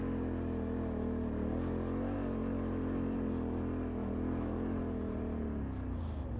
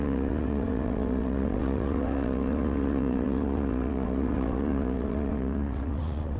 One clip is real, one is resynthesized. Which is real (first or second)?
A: first